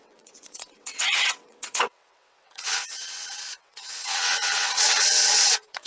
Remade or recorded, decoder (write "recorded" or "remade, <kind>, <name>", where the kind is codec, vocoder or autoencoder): remade, vocoder, WaveNeXt